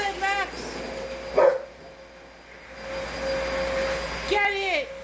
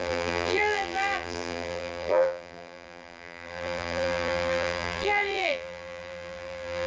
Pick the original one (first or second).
first